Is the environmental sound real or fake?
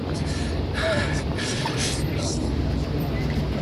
fake